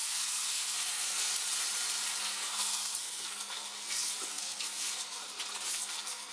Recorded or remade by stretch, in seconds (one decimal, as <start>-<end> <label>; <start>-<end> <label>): 0.0-1.3 remade; 1.3-2.2 recorded; 2.2-5.2 remade; 5.2-5.7 recorded; 5.7-6.3 remade